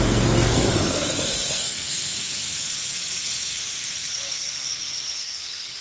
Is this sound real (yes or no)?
no